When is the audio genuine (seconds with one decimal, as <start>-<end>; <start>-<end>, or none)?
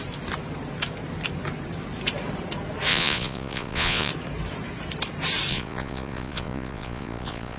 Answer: 0.0-2.9; 4.1-5.5